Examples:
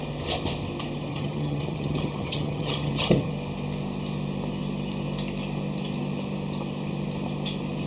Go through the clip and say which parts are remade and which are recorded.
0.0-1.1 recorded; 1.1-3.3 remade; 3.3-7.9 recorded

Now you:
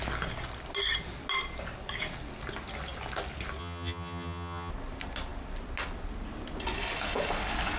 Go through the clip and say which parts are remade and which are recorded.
0.0-3.6 recorded; 3.6-4.7 remade; 4.7-7.8 recorded